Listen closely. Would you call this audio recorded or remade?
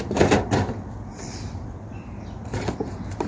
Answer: recorded